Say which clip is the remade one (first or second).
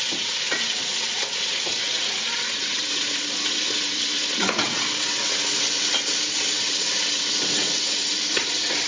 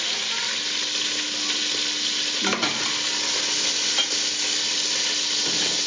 first